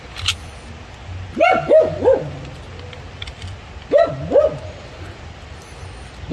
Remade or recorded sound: recorded